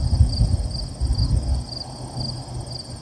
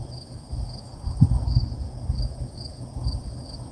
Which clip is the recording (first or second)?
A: first